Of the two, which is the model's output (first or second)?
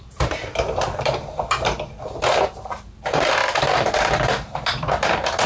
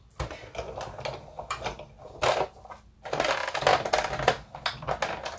first